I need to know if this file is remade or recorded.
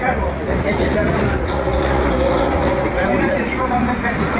remade